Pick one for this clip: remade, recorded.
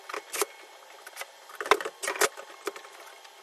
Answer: recorded